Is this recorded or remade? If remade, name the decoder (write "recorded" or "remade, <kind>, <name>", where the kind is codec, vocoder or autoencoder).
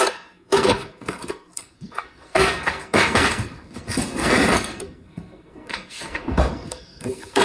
remade, codec, SNAC